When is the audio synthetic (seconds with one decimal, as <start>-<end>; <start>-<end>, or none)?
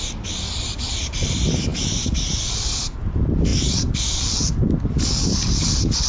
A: none